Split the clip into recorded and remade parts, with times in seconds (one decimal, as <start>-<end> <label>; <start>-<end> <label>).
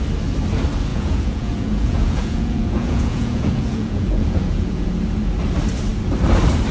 0.0-0.9 recorded; 0.9-4.9 remade; 4.9-6.7 recorded